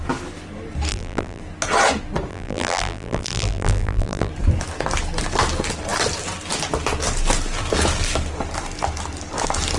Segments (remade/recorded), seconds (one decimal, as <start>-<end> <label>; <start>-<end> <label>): 0.0-0.9 recorded; 0.9-1.4 remade; 1.4-2.3 recorded; 2.3-4.3 remade; 4.3-9.8 recorded